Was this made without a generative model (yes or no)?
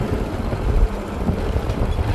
yes